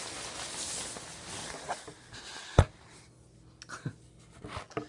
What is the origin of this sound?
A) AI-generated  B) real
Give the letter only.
B